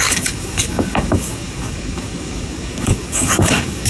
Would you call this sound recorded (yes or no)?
no